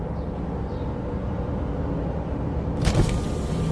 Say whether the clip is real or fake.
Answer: real